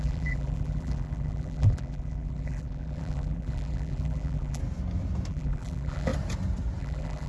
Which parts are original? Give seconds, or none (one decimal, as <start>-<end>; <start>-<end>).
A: 4.6-5.3; 6.1-6.8